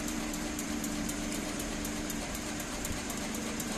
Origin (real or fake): fake